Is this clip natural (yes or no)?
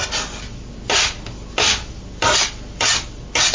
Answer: yes